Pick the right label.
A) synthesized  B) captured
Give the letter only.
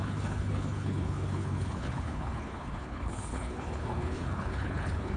A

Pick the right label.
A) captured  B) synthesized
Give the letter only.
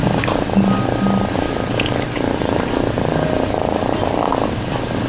A